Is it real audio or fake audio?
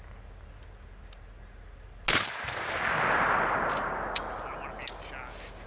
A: real